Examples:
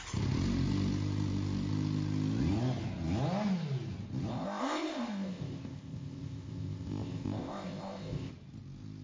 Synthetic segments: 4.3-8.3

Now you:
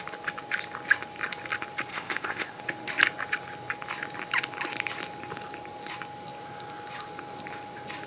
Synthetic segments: 1.9-2.6